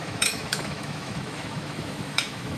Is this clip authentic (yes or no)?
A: no